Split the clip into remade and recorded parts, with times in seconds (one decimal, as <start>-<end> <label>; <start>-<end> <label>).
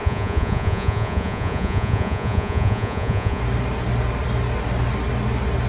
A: 0.0-3.4 remade; 3.4-5.7 recorded